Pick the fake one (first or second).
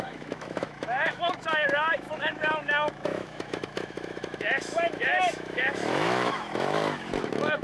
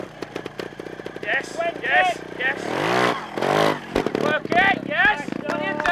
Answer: first